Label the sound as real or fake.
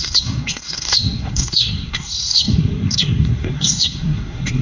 fake